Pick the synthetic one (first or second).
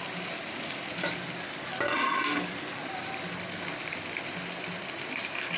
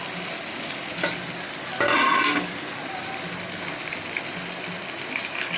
first